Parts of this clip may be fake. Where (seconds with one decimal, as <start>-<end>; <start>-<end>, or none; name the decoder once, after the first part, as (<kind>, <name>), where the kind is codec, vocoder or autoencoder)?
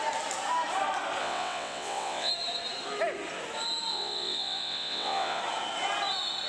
1.2-2.3 (vocoder, WaveNeXt); 3.9-5.4